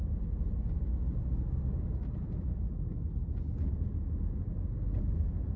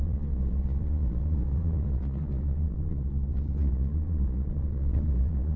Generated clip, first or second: second